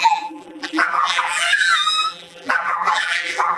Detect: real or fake fake